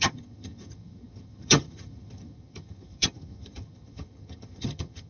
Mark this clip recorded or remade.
remade